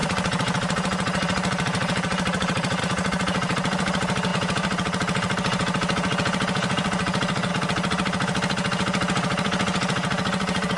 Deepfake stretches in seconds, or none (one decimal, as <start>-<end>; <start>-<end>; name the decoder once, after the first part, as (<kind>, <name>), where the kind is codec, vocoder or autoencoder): 0.0-2.8 (vocoder, BigVGAN v2)